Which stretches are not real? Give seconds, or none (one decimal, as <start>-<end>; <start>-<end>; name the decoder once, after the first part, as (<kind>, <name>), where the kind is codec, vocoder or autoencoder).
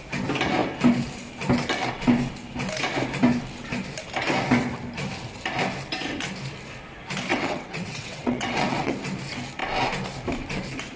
7.3-8.9 (vocoder, WaveNeXt)